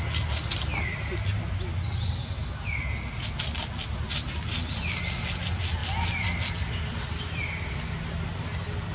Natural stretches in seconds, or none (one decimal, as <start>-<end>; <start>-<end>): 0.0-8.9